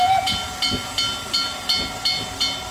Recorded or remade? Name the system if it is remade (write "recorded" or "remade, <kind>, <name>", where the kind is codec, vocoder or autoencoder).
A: recorded